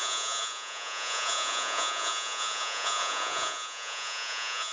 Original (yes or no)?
no